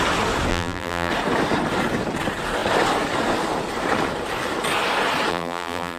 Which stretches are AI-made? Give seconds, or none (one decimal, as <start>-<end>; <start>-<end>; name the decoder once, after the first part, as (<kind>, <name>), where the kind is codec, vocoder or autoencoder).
0.5-1.1 (vocoder, BigVGAN v2); 5.3-6.0